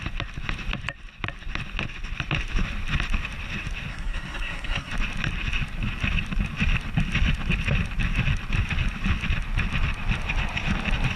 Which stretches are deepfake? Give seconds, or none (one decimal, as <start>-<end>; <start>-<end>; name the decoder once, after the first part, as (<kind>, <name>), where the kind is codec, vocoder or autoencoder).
3.9-4.9 (codec, SNAC)